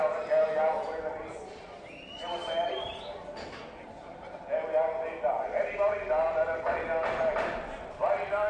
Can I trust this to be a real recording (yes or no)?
yes